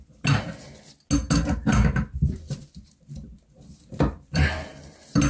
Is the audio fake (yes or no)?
no